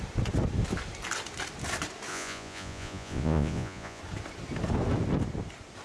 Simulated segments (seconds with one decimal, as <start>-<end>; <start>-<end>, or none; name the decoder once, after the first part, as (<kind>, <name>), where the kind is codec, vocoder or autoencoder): 2.1-4.0 (vocoder, Vocos)